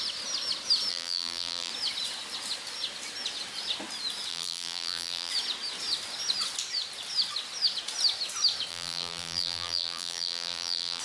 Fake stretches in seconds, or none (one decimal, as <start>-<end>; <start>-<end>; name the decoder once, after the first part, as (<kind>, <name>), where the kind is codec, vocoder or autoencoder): 0.9-1.7 (vocoder, BigVGAN v2); 4.3-5.3; 8.7-11.0